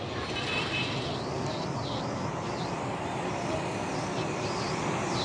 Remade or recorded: recorded